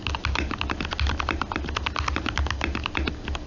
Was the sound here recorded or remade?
recorded